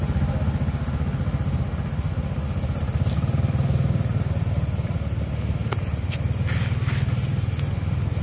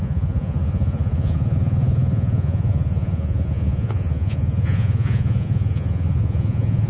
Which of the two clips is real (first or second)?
first